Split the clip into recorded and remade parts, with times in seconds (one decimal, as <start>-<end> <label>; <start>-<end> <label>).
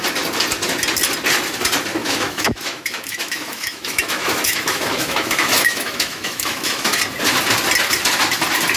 0.0-2.0 recorded; 2.0-7.0 remade; 7.0-8.8 recorded